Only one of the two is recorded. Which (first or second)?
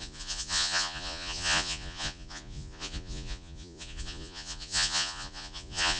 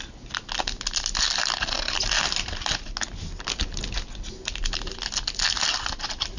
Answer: second